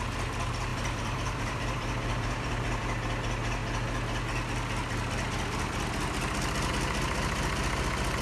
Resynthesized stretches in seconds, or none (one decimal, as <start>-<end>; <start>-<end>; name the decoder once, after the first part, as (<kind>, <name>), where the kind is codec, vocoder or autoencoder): 0.7-2.8 (vocoder, BigVGAN v2)